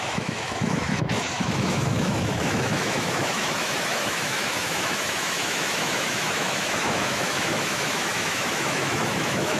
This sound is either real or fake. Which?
fake